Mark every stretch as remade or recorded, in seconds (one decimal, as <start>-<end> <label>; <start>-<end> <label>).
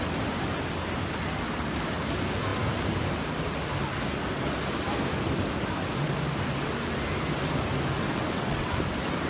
0.0-8.1 recorded; 8.1-8.8 remade; 8.8-9.3 recorded